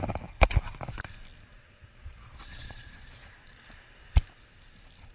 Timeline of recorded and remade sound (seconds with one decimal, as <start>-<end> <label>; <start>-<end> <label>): 0.0-1.5 recorded; 1.5-3.8 remade; 3.8-5.1 recorded